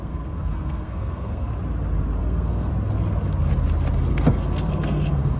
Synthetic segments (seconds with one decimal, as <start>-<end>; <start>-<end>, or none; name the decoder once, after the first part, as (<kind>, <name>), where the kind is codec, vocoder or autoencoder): 0.0-1.5 (codec, SNAC); 2.2-2.7; 4.1-5.4